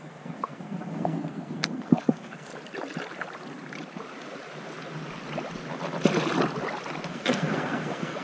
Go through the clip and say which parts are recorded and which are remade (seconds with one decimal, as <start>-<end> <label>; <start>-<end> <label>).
0.0-2.5 remade; 2.5-7.1 recorded; 7.1-8.2 remade